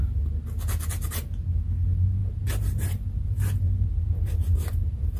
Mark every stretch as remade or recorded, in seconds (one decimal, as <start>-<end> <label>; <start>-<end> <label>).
0.0-2.2 recorded; 2.2-5.2 remade